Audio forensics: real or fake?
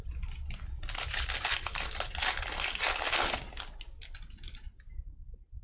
real